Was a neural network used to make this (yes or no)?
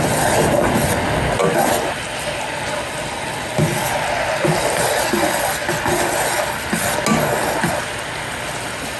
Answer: no